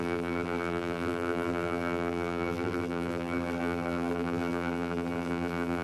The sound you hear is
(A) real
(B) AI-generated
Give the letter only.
B